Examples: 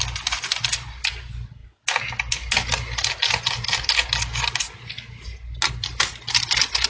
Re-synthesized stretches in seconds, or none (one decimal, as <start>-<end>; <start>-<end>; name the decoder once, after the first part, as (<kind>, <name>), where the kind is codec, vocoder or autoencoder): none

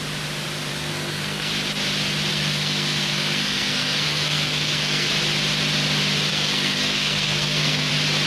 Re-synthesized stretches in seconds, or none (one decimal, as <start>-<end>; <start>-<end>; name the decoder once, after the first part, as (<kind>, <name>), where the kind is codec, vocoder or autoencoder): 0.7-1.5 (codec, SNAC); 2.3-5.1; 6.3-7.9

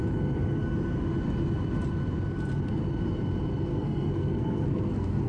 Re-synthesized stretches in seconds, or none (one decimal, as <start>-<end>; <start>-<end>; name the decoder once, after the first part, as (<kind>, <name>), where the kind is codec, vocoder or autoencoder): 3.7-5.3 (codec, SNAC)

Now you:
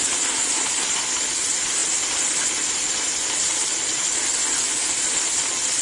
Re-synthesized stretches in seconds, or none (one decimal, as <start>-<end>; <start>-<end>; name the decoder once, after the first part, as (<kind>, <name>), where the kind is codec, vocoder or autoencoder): none

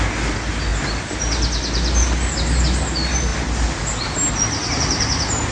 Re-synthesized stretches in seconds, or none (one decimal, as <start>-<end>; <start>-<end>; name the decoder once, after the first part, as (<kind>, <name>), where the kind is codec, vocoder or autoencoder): none